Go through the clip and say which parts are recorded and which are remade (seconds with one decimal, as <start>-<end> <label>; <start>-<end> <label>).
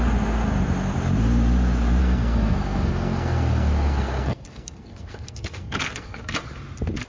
0.0-2.0 recorded; 2.0-6.3 remade; 6.3-7.1 recorded